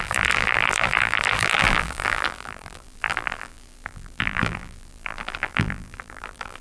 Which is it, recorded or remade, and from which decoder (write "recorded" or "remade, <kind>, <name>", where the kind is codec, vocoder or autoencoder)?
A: remade, vocoder, BigVGAN v2